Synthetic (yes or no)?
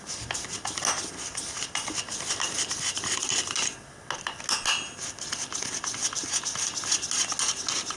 no